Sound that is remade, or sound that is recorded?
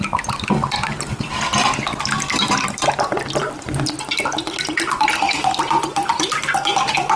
remade